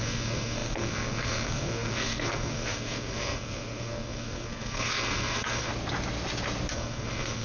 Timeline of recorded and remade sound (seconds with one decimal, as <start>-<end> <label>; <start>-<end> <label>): 0.0-5.7 remade; 5.7-6.7 recorded; 6.7-7.4 remade